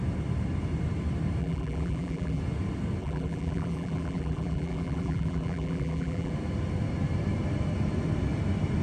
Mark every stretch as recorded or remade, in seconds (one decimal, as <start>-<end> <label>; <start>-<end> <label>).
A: 0.0-1.4 recorded; 1.4-2.4 remade; 2.4-3.0 recorded; 3.0-6.3 remade; 6.3-8.8 recorded